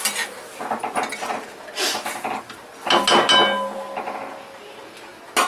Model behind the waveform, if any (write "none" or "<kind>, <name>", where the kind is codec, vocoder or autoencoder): none